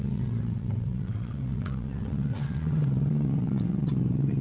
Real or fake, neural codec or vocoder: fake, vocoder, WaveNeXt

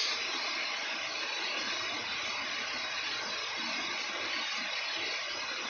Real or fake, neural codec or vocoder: real